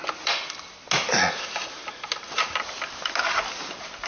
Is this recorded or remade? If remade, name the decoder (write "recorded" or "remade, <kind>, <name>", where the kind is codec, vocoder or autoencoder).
recorded